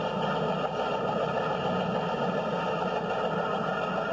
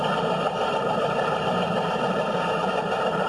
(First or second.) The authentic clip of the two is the first